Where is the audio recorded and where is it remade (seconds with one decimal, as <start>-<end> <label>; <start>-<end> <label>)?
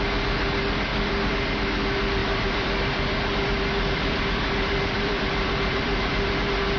0.0-0.9 recorded; 0.9-1.5 remade; 1.5-2.2 recorded; 2.2-6.3 remade; 6.3-6.8 recorded